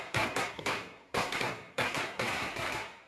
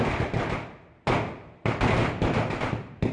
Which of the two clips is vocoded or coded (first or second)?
first